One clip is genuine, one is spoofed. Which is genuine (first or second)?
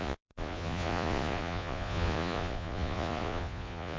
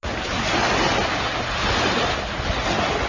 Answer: second